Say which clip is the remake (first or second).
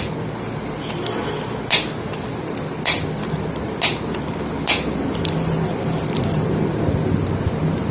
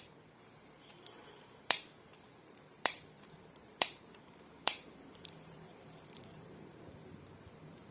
second